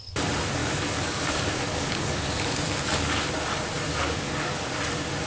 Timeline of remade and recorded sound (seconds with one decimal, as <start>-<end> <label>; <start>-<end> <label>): 0.0-0.6 recorded; 0.6-3.3 remade; 3.3-3.9 recorded; 3.9-4.7 remade; 4.7-5.3 recorded